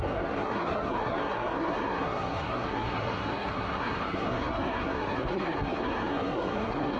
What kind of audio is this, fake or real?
fake